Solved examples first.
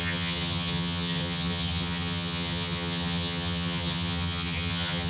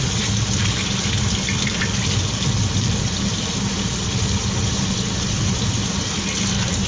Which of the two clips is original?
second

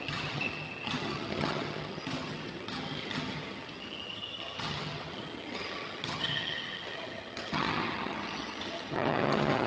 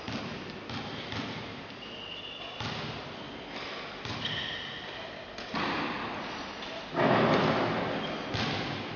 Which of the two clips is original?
second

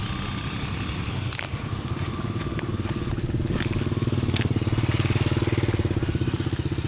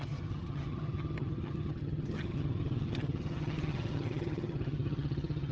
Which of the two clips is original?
first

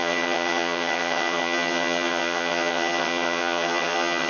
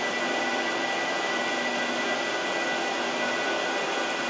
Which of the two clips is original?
second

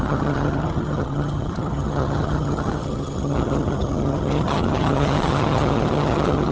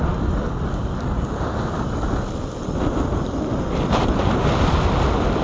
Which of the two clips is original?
second